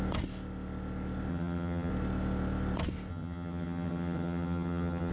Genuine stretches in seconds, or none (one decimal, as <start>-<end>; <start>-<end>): 0.0-1.3; 1.9-3.1